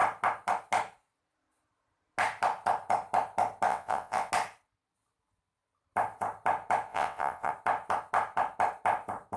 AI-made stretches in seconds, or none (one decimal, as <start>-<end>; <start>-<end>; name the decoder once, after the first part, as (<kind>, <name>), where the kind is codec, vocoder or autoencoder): 3.7-4.3 (vocoder, WaveNeXt); 6.9-7.5